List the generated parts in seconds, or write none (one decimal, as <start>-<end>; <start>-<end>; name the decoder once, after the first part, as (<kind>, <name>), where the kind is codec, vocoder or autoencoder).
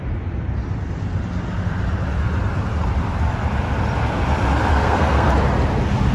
4.7-5.3 (codec, SNAC)